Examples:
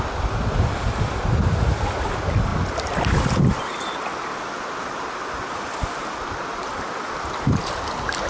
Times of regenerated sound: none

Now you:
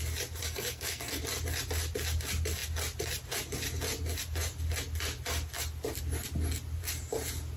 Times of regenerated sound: 0.4-1.2 (codec, SNAC)

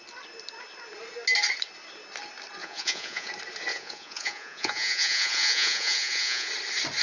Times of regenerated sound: 2.6-3.3 (vocoder, Vocos); 3.7-6.5

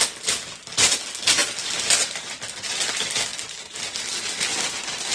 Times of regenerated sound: none

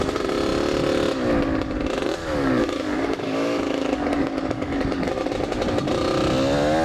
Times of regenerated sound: 2.2-5.1 (codec, DAC)

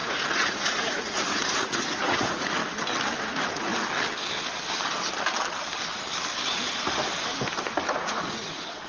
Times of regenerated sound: 0.0-2.6 (vocoder, Vocos); 3.2-3.7; 7.9-8.9